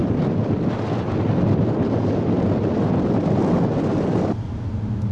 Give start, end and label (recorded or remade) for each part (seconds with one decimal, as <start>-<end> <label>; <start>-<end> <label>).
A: 0.0-5.1 recorded

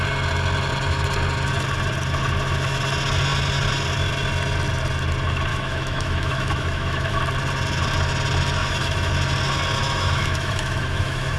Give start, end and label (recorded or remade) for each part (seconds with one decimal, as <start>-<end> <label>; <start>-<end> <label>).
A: 0.0-5.5 recorded; 5.5-7.2 remade; 7.2-8.6 recorded; 8.6-9.1 remade; 9.1-9.8 recorded; 9.8-11.4 remade

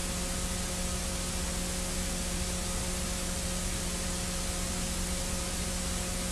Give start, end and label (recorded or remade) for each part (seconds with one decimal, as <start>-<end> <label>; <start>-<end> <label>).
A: 0.0-6.3 recorded

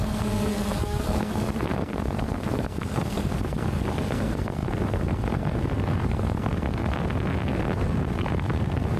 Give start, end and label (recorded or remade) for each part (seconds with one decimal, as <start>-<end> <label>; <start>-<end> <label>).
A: 0.0-9.0 remade

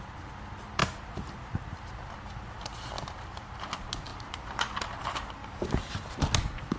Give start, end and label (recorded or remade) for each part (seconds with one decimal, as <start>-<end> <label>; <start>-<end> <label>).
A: 0.0-0.8 recorded; 0.8-1.9 remade; 1.9-5.4 recorded; 5.4-6.2 remade; 6.2-6.8 recorded

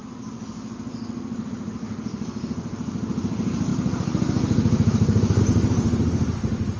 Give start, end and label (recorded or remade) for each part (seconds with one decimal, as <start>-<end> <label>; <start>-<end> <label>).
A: 0.0-6.8 recorded

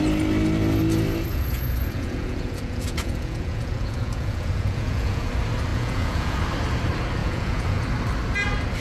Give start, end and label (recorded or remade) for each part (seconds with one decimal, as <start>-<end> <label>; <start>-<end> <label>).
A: 0.0-1.3 recorded; 1.3-5.3 remade; 5.3-5.7 recorded; 5.7-6.4 remade; 6.4-7.2 recorded; 7.2-7.8 remade; 7.8-8.8 recorded